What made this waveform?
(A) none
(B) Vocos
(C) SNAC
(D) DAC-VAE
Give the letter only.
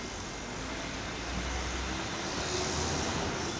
A